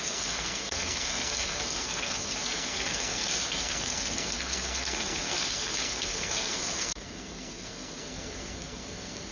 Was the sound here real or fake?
fake